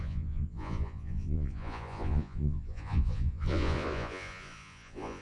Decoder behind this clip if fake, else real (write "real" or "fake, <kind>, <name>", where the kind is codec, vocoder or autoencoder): fake, vocoder, Vocos